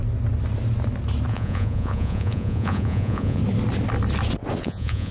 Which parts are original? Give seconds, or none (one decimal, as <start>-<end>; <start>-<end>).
0.0-1.3; 3.4-4.6